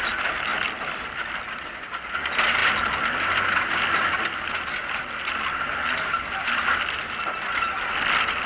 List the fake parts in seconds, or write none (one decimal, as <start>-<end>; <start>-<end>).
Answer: none